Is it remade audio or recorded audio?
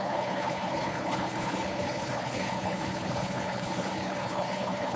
remade